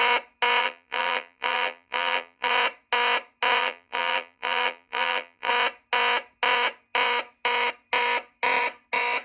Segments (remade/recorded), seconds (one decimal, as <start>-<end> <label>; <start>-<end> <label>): 0.0-0.6 recorded; 0.6-2.5 remade; 2.5-3.6 recorded; 3.6-5.5 remade; 5.5-9.2 recorded

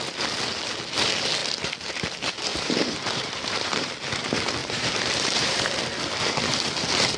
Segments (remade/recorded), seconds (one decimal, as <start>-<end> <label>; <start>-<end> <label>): 0.0-2.5 recorded; 2.5-3.9 remade; 3.9-4.6 recorded; 4.6-5.7 remade; 5.7-7.2 recorded

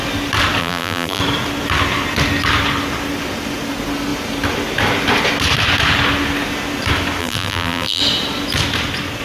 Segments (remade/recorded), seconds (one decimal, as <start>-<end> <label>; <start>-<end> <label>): 0.0-0.6 recorded; 0.6-1.2 remade; 1.2-7.2 recorded; 7.2-8.0 remade; 8.0-9.2 recorded

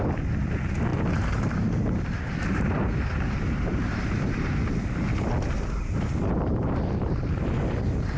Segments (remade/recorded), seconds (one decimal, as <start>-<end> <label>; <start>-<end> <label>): 0.0-0.9 recorded; 0.9-4.5 remade; 4.5-8.2 recorded

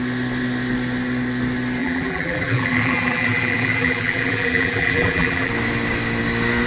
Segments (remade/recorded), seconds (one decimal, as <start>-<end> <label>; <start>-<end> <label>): 0.0-1.8 recorded; 1.8-5.5 remade; 5.5-6.7 recorded

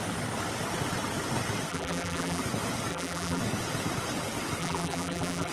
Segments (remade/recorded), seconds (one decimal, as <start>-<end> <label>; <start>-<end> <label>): 0.0-1.7 recorded; 1.7-2.4 remade; 2.4-2.9 recorded; 2.9-3.4 remade; 3.4-4.6 recorded; 4.6-5.5 remade